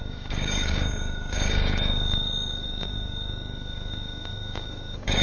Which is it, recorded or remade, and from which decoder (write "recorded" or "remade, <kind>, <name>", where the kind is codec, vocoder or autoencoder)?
remade, codec, DAC